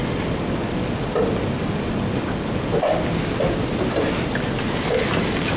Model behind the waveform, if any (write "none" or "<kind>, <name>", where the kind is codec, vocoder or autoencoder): none